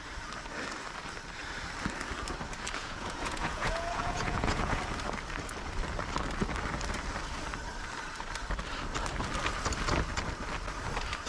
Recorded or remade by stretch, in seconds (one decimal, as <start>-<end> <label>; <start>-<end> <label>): 0.0-2.8 recorded; 2.8-4.8 remade; 4.8-11.3 recorded